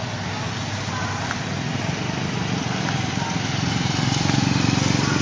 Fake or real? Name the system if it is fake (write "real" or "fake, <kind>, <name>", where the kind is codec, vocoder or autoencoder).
real